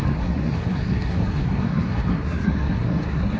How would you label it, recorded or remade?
remade